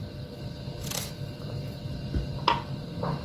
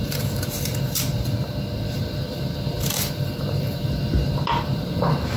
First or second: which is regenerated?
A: second